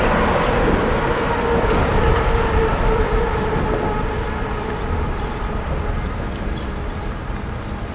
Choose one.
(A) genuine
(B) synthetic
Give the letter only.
B